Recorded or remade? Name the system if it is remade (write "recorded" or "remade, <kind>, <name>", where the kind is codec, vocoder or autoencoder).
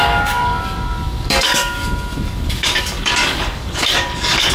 remade, codec, DAC